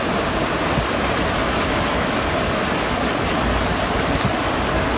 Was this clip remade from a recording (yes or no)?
no